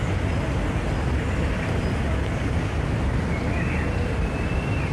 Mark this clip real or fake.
real